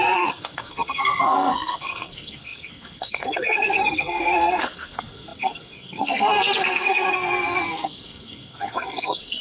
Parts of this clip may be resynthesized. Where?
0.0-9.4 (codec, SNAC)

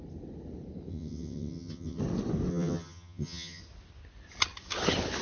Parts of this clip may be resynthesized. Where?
0.9-2.0 (vocoder, HiFi-GAN); 2.5-3.6

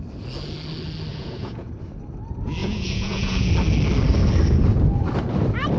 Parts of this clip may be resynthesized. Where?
1.1-1.7 (vocoder, Vocos); 2.6-3.5